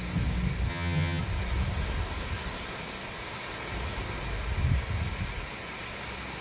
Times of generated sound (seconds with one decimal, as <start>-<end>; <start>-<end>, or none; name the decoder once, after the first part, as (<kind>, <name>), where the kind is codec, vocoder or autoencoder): 0.7-1.2 (vocoder, HiFi-GAN)